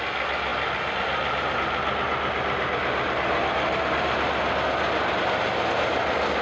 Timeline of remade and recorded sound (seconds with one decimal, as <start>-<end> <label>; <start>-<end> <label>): 0.0-6.4 recorded